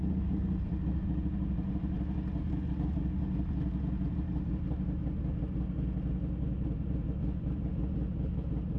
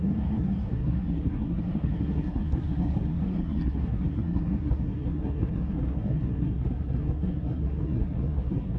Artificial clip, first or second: second